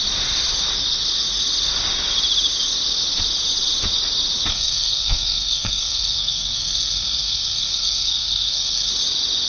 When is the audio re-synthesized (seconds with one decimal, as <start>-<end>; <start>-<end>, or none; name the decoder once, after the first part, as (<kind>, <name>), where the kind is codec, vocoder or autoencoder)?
4.5-8.9 (codec, SNAC)